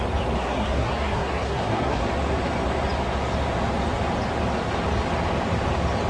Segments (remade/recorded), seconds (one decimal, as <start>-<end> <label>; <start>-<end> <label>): 0.0-0.4 recorded; 0.4-2.0 remade; 2.0-6.1 recorded

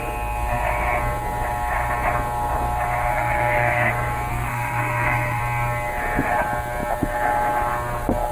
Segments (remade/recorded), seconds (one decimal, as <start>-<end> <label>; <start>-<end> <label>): 0.0-3.1 recorded; 3.1-3.9 remade; 3.9-4.3 recorded; 4.3-5.4 remade; 5.4-8.3 recorded

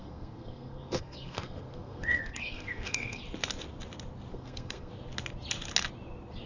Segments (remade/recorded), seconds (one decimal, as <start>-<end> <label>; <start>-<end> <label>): 0.0-3.2 remade; 3.2-4.3 recorded; 4.3-4.9 remade; 4.9-6.5 recorded

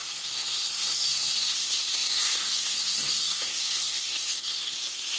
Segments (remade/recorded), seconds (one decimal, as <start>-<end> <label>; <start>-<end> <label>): 0.0-5.2 remade

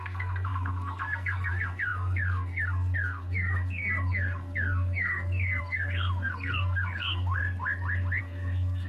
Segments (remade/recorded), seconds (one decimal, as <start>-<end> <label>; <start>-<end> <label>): 0.0-7.4 remade; 7.4-8.2 recorded; 8.2-8.9 remade